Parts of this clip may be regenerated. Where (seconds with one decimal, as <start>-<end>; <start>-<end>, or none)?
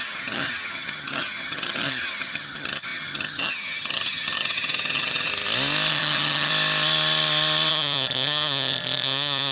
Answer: 0.0-5.3; 5.9-6.5; 7.7-9.5